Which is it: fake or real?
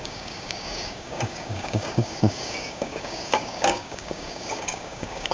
fake